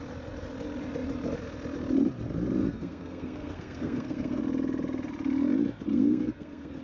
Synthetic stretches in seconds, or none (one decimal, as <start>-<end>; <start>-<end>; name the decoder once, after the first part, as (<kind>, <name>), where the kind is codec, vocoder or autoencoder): 2.6-4.4 (codec, SNAC); 5.9-6.8